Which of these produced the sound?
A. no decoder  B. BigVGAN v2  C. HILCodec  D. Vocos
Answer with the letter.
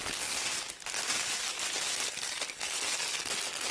A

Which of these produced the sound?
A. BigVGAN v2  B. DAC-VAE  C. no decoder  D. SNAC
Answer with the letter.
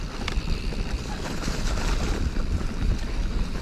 A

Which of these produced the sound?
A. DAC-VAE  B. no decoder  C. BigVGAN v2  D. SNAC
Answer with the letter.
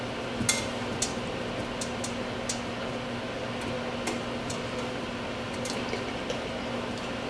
B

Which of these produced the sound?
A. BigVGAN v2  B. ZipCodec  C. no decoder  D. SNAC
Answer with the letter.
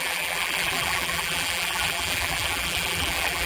A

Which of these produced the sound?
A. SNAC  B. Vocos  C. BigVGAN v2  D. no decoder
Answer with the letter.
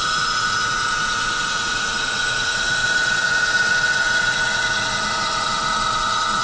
B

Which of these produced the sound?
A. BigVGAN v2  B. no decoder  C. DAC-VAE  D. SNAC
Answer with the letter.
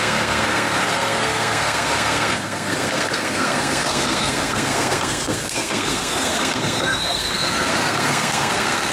D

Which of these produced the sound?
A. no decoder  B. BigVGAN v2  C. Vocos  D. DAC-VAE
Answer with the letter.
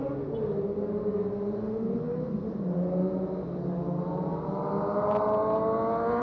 A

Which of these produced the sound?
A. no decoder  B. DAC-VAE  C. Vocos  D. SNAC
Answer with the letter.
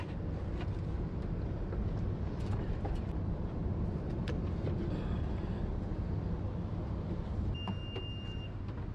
A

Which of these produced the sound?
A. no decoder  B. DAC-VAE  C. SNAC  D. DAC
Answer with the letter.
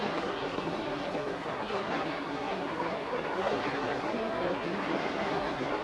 C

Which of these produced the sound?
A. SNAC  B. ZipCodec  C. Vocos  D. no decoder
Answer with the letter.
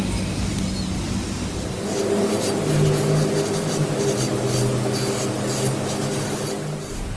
D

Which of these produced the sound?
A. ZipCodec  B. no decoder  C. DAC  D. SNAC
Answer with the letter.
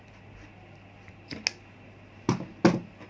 B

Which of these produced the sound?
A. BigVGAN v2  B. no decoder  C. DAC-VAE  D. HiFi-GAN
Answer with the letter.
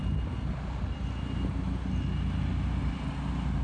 B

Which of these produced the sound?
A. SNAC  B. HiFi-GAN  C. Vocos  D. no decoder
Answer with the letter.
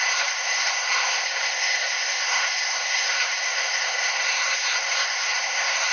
A